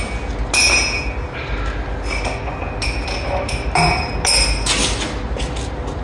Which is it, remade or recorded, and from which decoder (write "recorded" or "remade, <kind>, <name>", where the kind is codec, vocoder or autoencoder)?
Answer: recorded